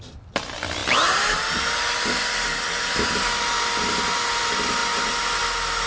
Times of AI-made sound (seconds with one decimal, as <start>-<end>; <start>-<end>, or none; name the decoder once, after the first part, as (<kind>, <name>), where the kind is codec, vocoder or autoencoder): none